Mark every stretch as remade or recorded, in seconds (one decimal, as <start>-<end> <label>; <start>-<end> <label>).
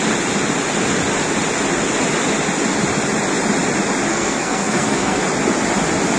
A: 0.0-4.1 recorded; 4.1-5.2 remade; 5.2-6.2 recorded